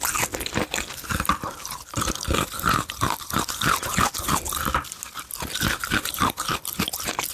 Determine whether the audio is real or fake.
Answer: real